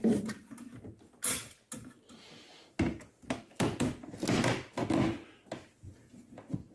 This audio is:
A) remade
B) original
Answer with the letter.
B